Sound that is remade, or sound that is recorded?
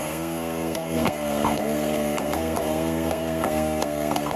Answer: remade